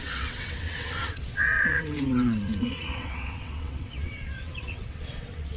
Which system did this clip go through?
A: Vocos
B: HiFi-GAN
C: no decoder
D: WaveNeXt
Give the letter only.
D